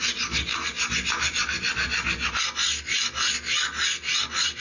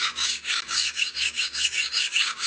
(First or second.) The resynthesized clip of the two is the second